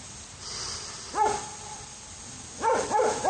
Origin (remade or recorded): recorded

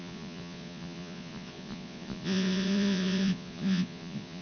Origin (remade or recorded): remade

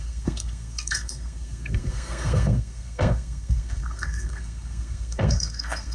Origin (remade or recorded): remade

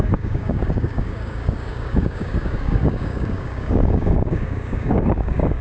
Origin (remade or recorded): remade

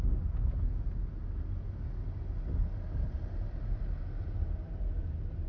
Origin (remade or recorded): recorded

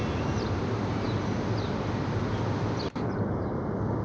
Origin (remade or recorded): recorded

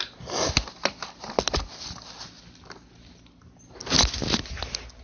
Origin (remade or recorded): recorded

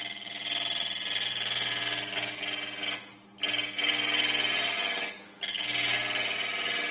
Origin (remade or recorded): recorded